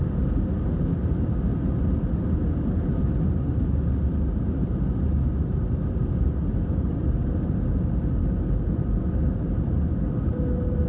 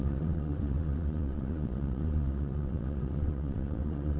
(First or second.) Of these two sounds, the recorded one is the first